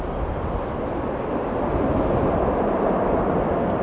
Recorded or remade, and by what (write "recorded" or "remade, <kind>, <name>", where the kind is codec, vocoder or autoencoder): recorded